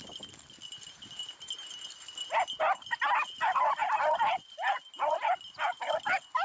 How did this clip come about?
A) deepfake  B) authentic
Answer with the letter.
B